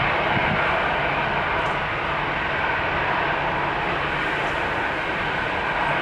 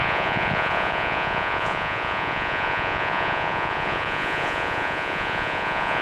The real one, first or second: first